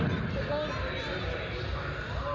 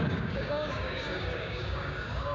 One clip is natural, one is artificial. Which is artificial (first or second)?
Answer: second